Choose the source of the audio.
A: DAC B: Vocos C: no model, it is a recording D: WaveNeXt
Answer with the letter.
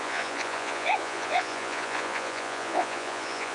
B